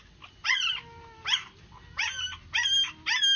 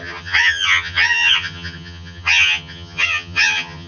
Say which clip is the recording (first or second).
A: first